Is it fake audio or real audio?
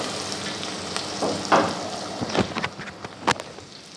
real